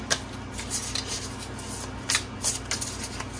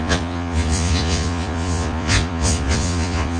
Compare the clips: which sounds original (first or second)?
first